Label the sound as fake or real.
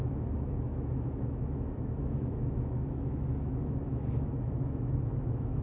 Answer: fake